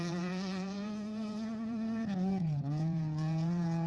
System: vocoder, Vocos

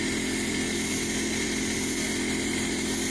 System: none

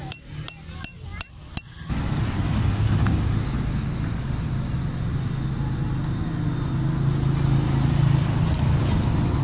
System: none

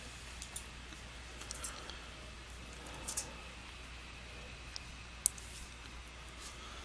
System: none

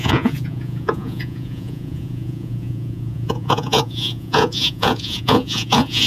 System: vocoder, Vocos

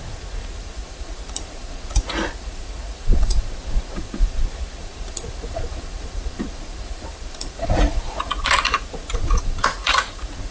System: vocoder, Vocos